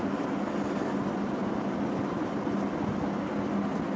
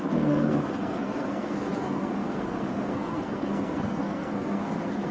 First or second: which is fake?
second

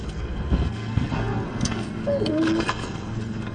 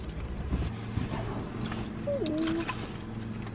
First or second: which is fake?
first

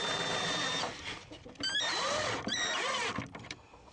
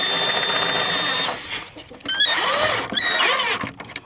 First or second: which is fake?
first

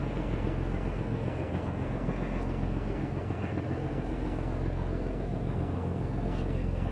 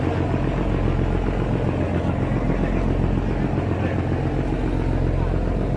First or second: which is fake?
first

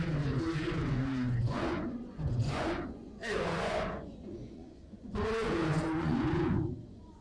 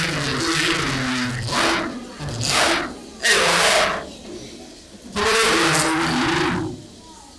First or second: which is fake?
first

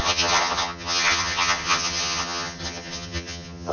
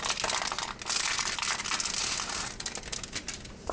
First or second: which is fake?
first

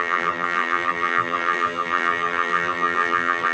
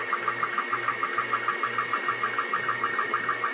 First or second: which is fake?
first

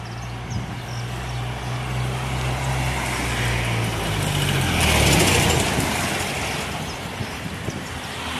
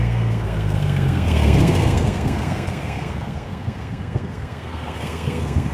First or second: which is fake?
second